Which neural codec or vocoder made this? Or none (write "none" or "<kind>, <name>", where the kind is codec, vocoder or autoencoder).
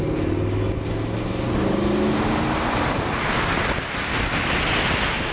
none